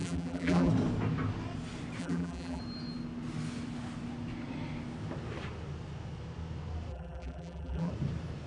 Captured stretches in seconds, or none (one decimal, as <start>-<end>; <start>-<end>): 0.7-2.0; 2.6-6.9; 7.9-8.5